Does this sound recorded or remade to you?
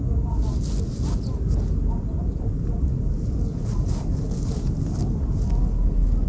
recorded